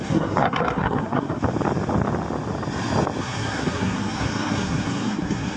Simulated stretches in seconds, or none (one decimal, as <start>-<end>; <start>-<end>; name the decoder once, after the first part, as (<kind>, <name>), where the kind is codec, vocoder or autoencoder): 0.0-1.4 (codec, SNAC); 3.2-5.6